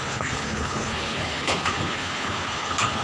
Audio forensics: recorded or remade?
remade